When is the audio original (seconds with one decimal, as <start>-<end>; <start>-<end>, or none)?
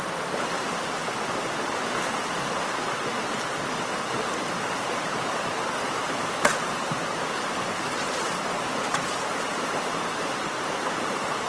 1.0-4.7